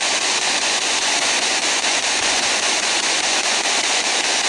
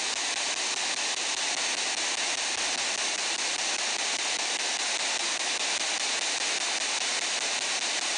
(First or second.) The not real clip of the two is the first